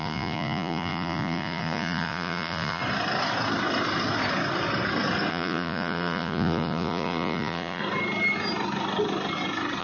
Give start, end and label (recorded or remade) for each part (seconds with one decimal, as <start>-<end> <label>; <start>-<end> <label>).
0.0-2.8 remade; 2.8-5.3 recorded; 5.3-7.8 remade; 7.8-9.8 recorded